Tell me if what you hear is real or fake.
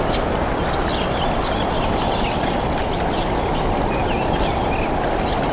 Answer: real